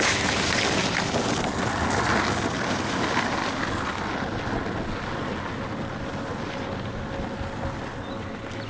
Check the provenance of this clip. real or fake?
real